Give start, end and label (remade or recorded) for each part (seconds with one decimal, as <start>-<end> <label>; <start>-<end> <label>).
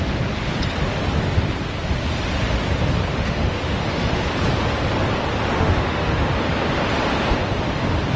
0.0-3.1 recorded; 3.1-4.2 remade; 4.2-5.5 recorded; 5.5-6.3 remade; 6.3-8.2 recorded